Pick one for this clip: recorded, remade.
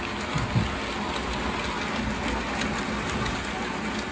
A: recorded